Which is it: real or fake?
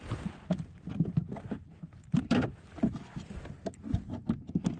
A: real